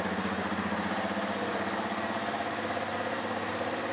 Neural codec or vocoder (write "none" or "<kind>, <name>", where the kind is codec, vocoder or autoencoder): vocoder, BigVGAN v2